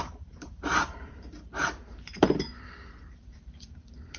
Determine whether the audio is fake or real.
fake